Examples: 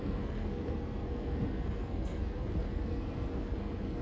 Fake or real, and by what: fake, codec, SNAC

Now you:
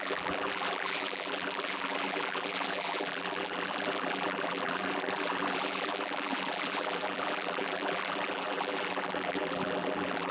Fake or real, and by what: fake, vocoder, BigVGAN v2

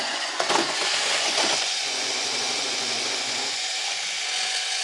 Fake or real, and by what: fake, vocoder, Vocos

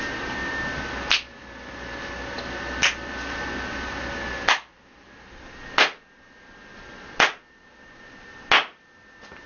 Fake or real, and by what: real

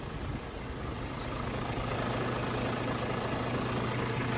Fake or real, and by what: real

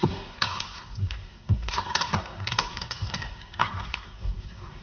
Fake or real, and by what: fake, codec, SNAC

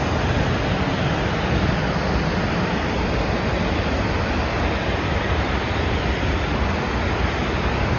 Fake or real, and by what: real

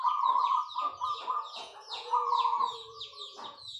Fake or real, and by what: fake, vocoder, Vocos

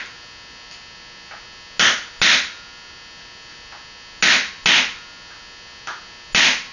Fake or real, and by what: real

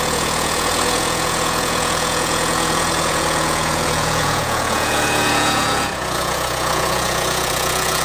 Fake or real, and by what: fake, vocoder, Vocos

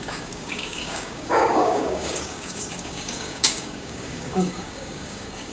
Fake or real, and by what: fake, codec, DAC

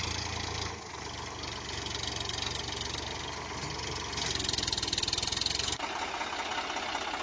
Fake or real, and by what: real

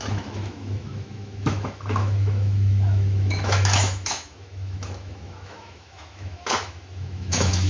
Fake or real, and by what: fake, autoencoder, DAC-VAE